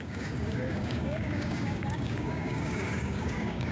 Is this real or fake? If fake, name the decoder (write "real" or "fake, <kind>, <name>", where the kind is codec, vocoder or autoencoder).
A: fake, codec, DAC